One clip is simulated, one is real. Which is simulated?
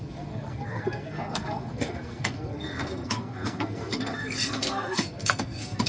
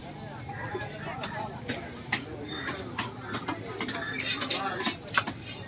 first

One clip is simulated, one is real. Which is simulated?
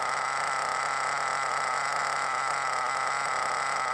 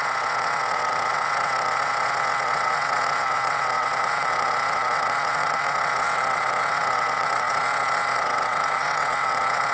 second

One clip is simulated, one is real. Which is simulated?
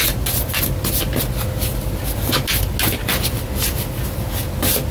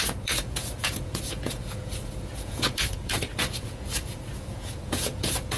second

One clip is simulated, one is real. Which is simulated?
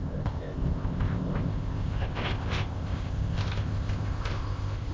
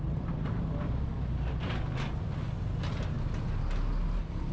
first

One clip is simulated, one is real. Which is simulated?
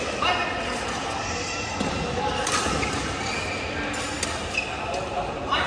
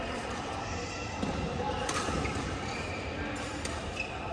second